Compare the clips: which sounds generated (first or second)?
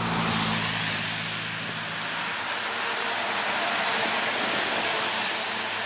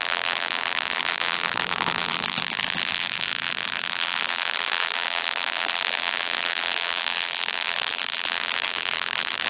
second